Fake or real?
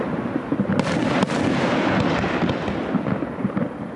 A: real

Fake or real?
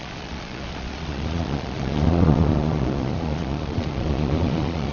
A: fake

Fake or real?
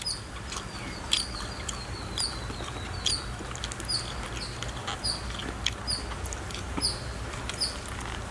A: real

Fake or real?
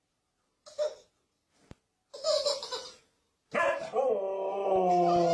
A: real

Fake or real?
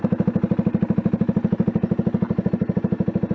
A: real